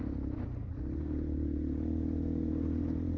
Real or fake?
real